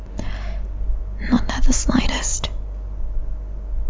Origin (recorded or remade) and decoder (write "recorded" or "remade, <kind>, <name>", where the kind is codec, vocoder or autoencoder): recorded